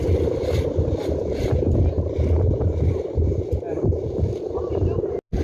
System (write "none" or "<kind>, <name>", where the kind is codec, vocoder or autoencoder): none